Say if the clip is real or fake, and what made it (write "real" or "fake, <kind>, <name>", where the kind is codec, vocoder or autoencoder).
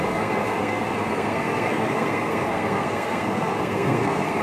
fake, codec, SNAC